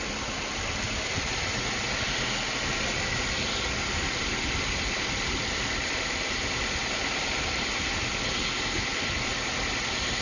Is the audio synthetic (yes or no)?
no